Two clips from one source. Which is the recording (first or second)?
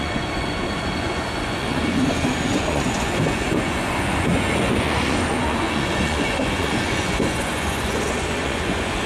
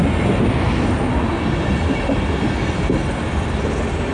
second